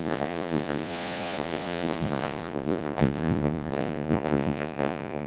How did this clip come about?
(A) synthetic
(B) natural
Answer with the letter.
A